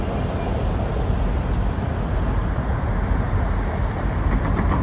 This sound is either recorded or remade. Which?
recorded